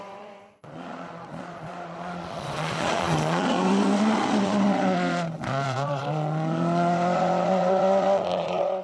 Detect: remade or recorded remade